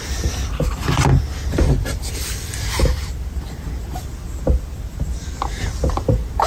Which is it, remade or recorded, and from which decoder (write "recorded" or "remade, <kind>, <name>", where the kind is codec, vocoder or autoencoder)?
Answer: recorded